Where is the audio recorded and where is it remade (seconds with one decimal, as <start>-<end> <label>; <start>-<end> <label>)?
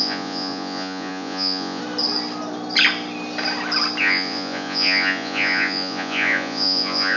0.0-1.8 remade; 1.8-4.0 recorded; 4.0-7.2 remade